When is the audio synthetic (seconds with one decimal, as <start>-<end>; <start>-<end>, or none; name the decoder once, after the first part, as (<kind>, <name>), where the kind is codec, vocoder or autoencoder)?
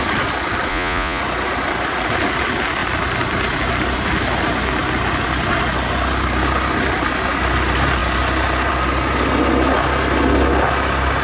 0.7-1.2 (vocoder, Vocos)